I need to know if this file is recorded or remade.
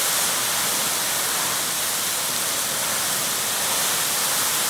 recorded